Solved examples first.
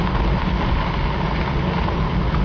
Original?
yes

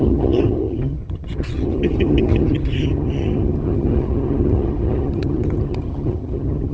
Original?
no